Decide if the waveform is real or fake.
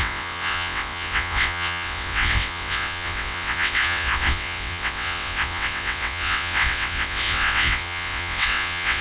fake